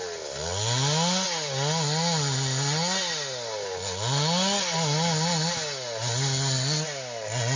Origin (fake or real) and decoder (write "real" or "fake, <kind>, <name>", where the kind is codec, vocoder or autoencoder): real